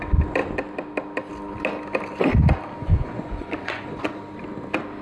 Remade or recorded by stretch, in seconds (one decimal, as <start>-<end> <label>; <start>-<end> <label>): 0.0-2.8 recorded; 2.8-4.2 remade; 4.2-5.0 recorded